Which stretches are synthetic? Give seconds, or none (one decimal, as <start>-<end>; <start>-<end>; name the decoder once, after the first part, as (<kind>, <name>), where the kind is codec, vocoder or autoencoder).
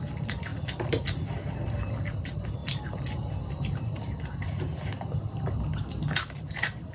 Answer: 0.5-1.9 (vocoder, BigVGAN v2); 2.6-6.9